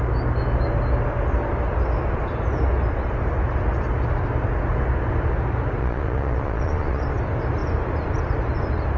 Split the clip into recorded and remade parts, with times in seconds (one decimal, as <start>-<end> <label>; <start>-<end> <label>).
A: 0.0-5.8 recorded; 5.8-7.0 remade; 7.0-9.0 recorded